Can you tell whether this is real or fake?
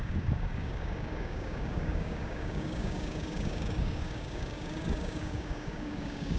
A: fake